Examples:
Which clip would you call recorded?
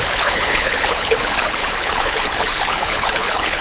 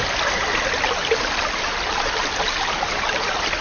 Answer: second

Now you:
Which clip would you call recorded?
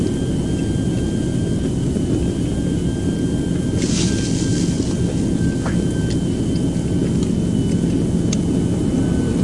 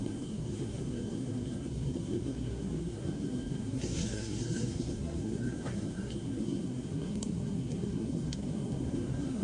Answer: first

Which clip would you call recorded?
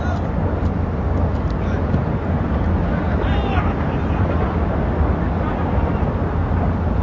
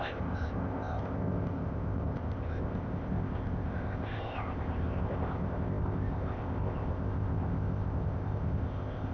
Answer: first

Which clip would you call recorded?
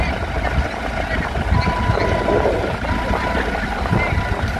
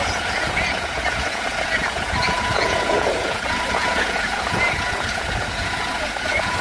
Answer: first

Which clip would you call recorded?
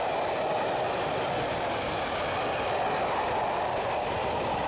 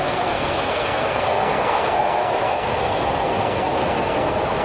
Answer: first